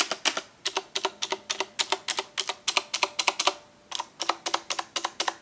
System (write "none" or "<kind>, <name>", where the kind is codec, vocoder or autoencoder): none